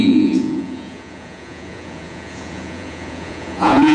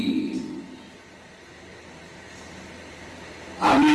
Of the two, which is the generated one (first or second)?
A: first